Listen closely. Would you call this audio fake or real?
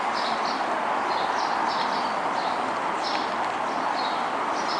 real